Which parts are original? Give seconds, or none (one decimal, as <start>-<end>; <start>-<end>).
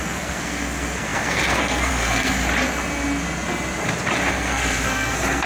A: 2.4-4.3